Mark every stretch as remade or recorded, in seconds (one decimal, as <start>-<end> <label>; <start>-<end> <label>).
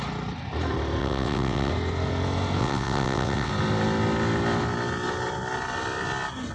0.0-1.0 recorded; 1.0-1.7 remade; 1.7-2.6 recorded; 2.6-3.5 remade; 3.5-6.5 recorded